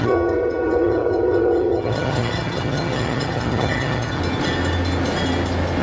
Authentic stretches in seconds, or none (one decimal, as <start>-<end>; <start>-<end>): 4.2-5.8